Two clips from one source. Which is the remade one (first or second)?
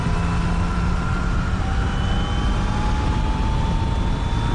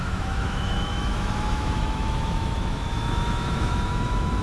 second